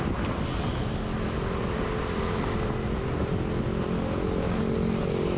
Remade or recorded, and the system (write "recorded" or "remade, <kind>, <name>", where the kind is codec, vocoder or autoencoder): recorded